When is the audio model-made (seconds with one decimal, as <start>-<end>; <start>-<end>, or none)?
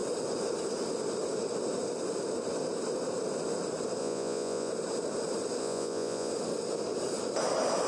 4.0-4.7; 5.6-6.3